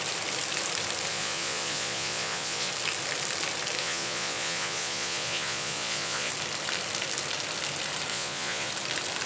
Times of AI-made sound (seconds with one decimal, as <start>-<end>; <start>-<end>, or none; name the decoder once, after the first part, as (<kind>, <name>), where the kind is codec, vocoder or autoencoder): 1.1-2.7 (vocoder, Vocos); 3.8-6.3; 8.1-8.7